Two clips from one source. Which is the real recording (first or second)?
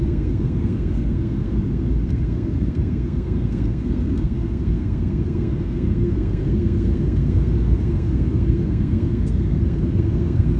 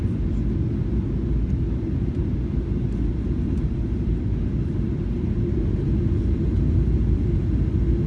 second